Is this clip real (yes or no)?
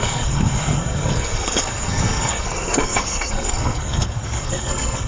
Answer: no